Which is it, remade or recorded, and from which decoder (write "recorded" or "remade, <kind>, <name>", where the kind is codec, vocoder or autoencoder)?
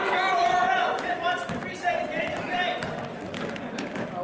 recorded